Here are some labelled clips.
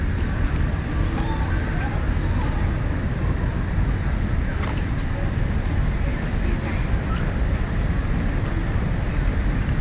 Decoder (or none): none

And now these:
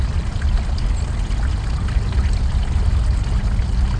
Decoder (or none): none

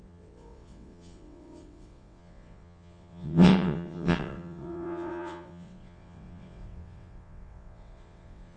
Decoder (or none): vocoder, WaveNeXt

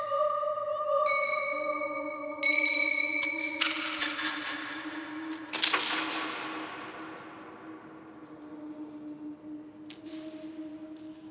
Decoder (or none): none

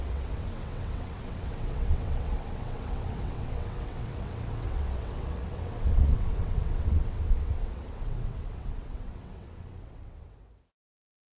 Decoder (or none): vocoder, WaveNeXt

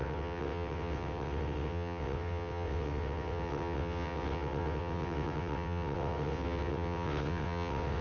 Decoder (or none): vocoder, WaveNeXt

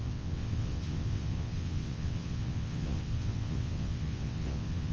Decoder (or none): vocoder, WaveNeXt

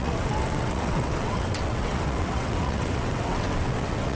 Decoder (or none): vocoder, WaveNeXt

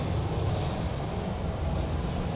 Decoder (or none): none